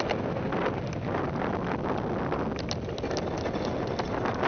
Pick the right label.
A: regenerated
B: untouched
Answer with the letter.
B